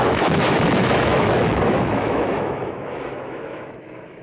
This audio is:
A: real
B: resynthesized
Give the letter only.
B